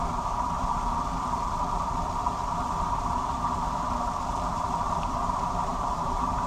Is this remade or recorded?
remade